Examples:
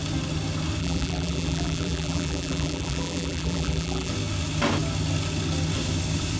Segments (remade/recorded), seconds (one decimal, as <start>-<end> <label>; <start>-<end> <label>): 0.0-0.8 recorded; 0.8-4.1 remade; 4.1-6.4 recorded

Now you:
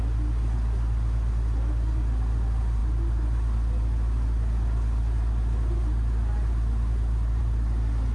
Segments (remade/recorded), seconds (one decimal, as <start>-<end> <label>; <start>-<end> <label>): 0.0-8.1 recorded

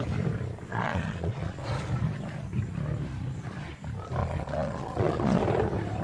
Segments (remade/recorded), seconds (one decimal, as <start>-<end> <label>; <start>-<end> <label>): 0.0-0.7 recorded; 0.7-1.6 remade; 1.6-4.2 recorded; 4.2-5.4 remade; 5.4-6.0 recorded

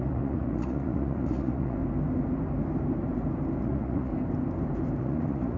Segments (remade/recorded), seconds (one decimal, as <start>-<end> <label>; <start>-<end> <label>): 0.0-1.8 remade; 1.8-3.6 recorded; 3.6-4.1 remade; 4.1-5.0 recorded; 5.0-5.6 remade

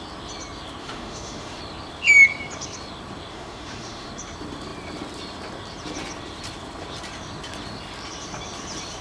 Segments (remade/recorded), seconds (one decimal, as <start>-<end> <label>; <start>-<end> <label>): 0.0-0.8 recorded; 0.8-1.6 remade; 1.6-3.3 recorded; 3.3-4.1 remade; 4.1-9.0 recorded